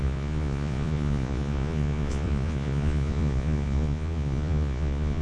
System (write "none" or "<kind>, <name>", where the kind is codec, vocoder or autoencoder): vocoder, Vocos